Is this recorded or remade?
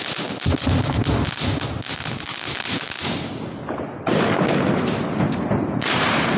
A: recorded